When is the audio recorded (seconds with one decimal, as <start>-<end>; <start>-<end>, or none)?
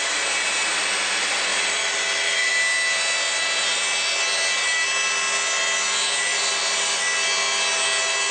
0.0-1.5; 2.5-6.3; 7.0-8.3